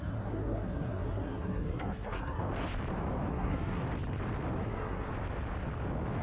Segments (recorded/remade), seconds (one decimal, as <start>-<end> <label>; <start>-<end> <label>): 0.0-2.4 remade; 2.4-3.3 recorded; 3.3-3.8 remade; 3.8-4.6 recorded; 4.6-5.1 remade; 5.1-6.2 recorded